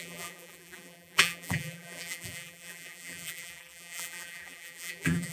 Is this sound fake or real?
fake